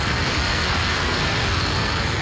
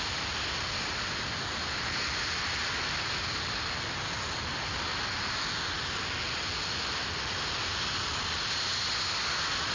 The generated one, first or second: first